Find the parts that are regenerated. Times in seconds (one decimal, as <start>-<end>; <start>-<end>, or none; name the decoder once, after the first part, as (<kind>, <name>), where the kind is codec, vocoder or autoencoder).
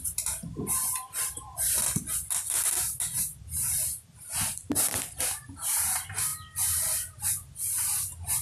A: none